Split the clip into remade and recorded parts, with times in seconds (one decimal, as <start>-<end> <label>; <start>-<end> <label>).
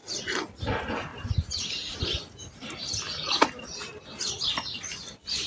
0.0-5.5 recorded